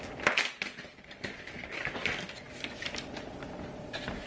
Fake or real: real